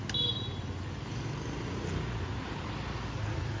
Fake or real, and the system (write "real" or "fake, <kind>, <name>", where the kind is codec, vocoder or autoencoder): real